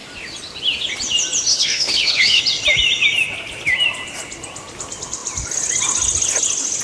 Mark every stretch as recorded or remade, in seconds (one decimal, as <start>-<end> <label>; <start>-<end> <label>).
0.0-1.5 recorded; 1.5-2.4 remade; 2.4-6.8 recorded